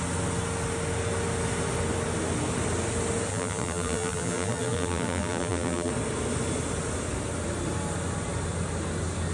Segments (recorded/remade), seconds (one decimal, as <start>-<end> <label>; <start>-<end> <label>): 0.0-3.3 recorded; 3.3-5.9 remade; 5.9-9.3 recorded